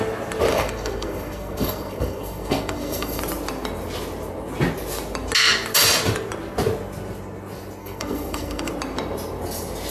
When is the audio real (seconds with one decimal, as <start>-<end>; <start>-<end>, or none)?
0.0-0.5; 3.2-7.8; 8.7-9.9